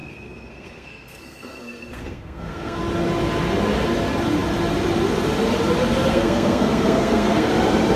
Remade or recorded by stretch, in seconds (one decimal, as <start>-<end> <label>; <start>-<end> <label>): 0.0-2.8 remade; 2.8-6.1 recorded; 6.1-7.5 remade; 7.5-8.0 recorded

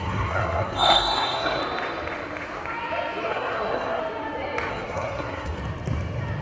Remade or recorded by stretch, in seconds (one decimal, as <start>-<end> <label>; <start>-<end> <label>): 0.0-1.6 remade; 1.6-3.3 recorded; 3.3-4.0 remade; 4.0-4.7 recorded; 4.7-5.6 remade; 5.6-6.4 recorded

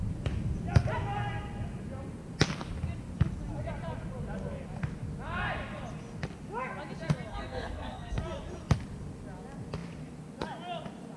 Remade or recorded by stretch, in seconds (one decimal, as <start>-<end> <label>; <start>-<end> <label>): 0.0-7.3 recorded; 7.3-8.2 remade; 8.2-11.2 recorded

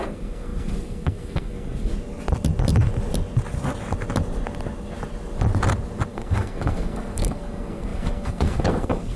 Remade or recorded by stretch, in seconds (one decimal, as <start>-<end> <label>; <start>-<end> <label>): 0.0-1.9 remade; 1.9-6.1 recorded; 6.1-9.2 remade

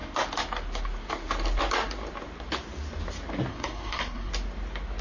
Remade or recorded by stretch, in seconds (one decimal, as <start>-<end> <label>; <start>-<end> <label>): 0.0-3.5 recorded; 3.5-4.3 remade; 4.3-5.0 recorded

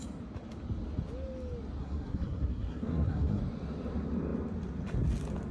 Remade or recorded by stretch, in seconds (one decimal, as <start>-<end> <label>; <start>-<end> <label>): 0.0-1.8 recorded; 1.8-3.4 remade; 3.4-5.5 recorded

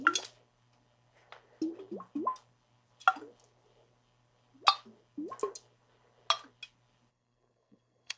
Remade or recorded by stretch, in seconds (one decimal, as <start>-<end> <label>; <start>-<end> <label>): 0.0-7.1 recorded; 7.1-8.2 remade